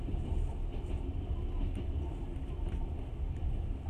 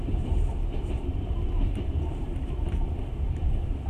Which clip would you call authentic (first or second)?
first